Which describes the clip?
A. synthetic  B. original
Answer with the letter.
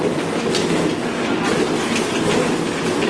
B